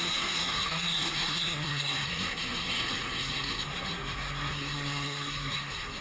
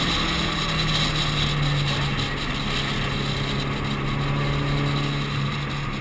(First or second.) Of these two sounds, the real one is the second